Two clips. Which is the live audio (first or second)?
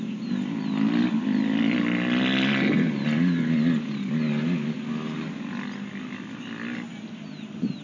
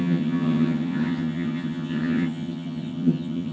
first